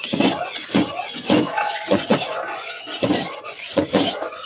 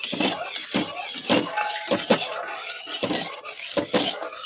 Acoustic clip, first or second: second